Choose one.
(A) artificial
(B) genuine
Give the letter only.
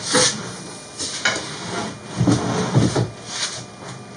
B